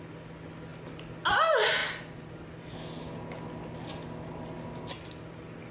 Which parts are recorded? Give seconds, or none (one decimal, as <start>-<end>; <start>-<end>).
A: 0.0-5.7